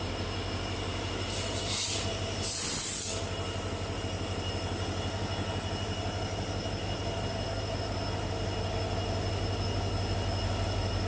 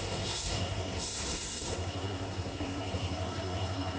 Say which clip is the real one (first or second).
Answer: first